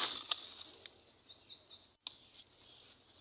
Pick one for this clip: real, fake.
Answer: real